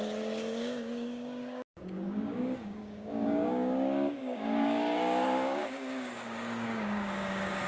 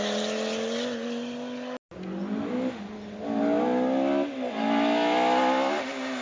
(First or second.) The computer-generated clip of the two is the first